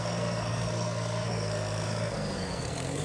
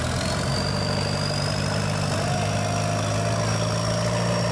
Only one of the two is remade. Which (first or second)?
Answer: first